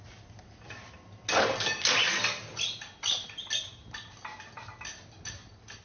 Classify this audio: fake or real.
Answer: real